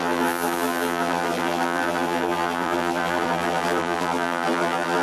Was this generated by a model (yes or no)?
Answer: yes